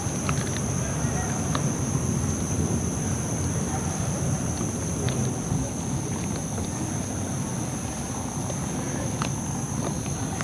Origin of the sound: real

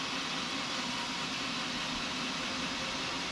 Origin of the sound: real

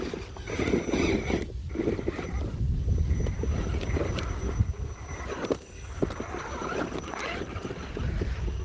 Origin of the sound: real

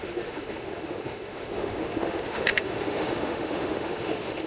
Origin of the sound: fake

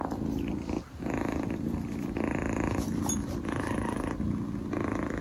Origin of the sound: real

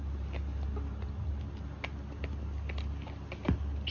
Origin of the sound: real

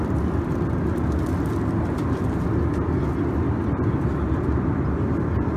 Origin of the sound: real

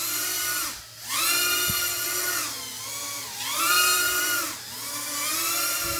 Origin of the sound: real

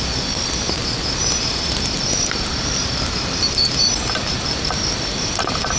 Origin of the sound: real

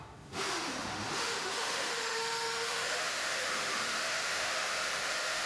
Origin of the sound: fake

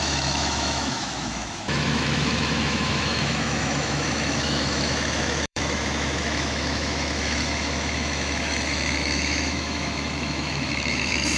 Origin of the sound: fake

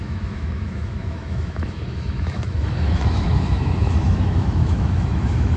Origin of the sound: fake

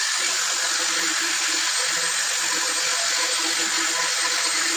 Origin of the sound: real